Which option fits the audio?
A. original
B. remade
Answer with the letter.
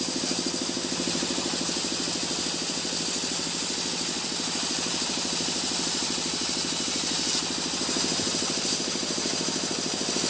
A